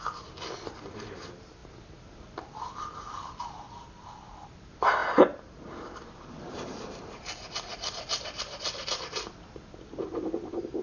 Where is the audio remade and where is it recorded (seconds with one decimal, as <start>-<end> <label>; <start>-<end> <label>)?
0.0-5.0 recorded; 5.0-7.1 remade; 7.1-7.7 recorded; 7.7-8.4 remade; 8.4-10.8 recorded